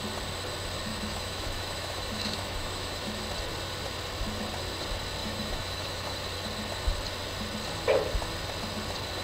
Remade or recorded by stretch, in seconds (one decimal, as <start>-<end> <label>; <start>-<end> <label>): 0.0-0.9 recorded; 0.9-3.2 remade; 3.2-5.2 recorded; 5.2-6.2 remade; 6.2-9.2 recorded